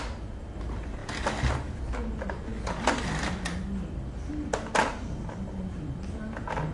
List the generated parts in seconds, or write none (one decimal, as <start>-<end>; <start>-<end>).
none